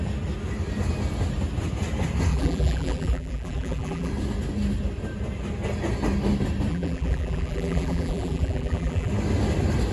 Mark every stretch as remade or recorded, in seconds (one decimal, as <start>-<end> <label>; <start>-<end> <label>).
0.0-2.3 recorded; 2.3-4.1 remade; 4.1-6.7 recorded; 6.7-9.1 remade; 9.1-9.9 recorded